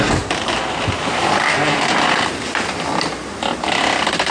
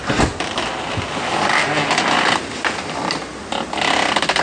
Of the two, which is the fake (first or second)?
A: first